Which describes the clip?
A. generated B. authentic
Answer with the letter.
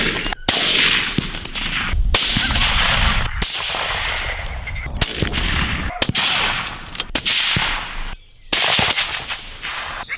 B